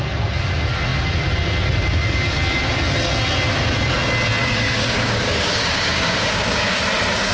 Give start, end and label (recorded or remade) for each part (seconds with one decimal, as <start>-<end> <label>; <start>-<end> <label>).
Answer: 0.0-4.4 recorded; 4.4-6.8 remade; 6.8-7.3 recorded